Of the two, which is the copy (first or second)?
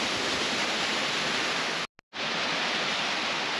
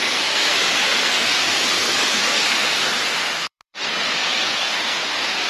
second